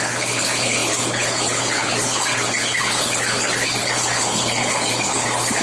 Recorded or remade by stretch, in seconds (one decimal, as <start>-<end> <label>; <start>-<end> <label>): 0.0-5.6 remade